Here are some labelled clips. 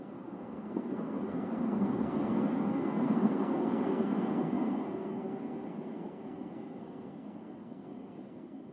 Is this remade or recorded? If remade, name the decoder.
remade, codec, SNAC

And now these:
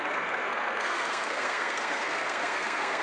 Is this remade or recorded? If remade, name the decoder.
remade, codec, SNAC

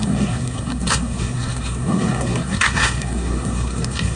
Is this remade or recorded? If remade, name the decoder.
remade, codec, SNAC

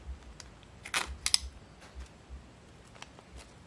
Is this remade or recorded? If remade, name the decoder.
recorded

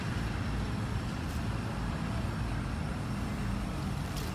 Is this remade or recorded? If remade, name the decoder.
recorded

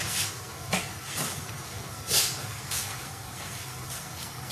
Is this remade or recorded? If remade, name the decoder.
remade, codec, SNAC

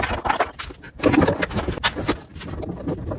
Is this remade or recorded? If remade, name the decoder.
recorded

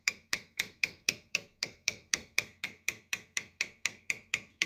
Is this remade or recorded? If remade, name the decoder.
remade, codec, SNAC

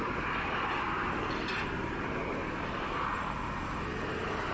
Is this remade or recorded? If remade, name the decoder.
recorded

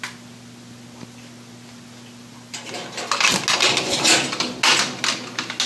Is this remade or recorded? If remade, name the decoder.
recorded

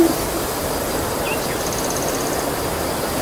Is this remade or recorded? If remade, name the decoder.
recorded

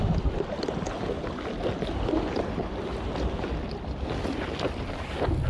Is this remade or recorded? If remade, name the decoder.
recorded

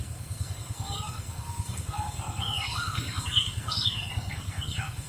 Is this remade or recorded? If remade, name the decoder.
remade, codec, SNAC